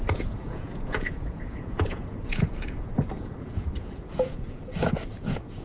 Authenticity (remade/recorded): remade